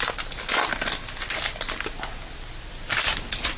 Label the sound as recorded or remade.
recorded